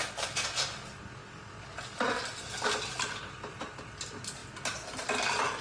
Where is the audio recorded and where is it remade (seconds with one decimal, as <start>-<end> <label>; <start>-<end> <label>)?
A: 0.0-5.6 recorded